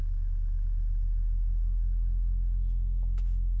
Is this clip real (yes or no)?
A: no